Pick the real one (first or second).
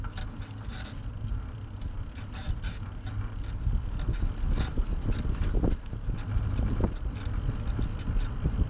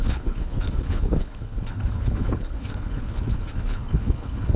first